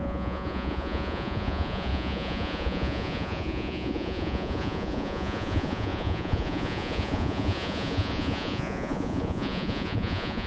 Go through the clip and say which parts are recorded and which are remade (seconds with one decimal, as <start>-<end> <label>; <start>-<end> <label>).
0.0-10.5 remade